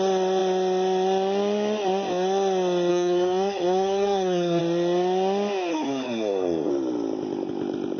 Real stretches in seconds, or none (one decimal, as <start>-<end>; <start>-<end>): 0.0-2.9; 4.6-5.7; 6.7-8.0

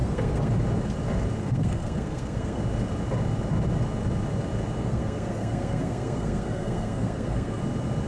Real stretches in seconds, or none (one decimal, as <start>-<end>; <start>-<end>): 0.5-1.4; 2.6-4.8; 7.6-8.1

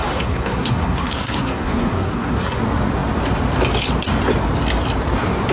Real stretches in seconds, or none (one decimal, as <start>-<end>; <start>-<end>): 2.6-5.5

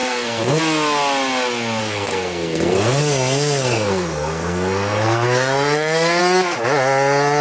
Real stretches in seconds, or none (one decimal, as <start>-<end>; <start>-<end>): 0.6-1.8; 6.2-7.4

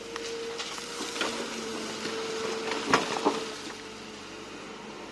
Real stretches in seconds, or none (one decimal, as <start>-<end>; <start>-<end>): 0.0-5.1

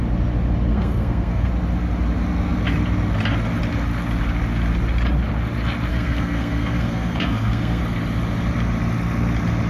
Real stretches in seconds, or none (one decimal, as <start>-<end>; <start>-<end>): 0.0-0.7; 1.5-5.9; 7.8-9.7

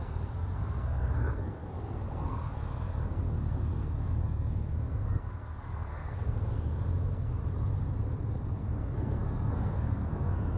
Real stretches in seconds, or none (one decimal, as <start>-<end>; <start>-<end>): 7.4-8.3